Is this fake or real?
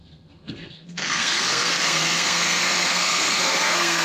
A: fake